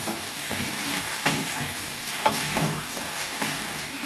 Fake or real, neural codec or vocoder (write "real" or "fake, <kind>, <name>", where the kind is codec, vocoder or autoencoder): fake, codec, DAC